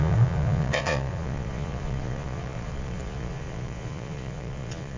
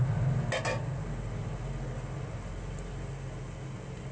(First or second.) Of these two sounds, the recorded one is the second